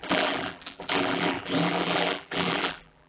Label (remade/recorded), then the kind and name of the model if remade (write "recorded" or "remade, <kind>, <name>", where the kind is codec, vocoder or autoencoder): remade, vocoder, BigVGAN v2